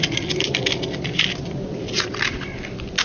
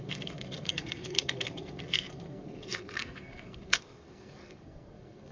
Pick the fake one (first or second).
second